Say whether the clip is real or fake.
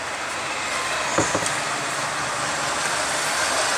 real